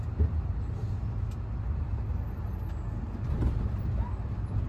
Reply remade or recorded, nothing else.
recorded